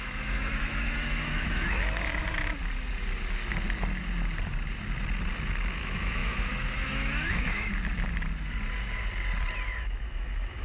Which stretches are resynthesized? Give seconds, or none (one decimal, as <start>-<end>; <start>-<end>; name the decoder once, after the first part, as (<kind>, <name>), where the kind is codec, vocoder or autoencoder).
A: 0.0-2.2 (autoencoder, DAC-VAE); 5.8-7.7; 9.8-10.6